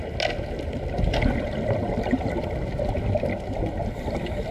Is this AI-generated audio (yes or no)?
no